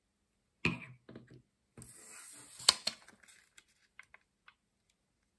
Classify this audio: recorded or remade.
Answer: recorded